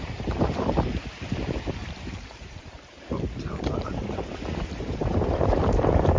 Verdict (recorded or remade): remade